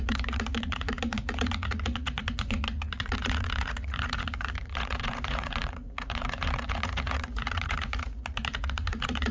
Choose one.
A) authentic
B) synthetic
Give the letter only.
B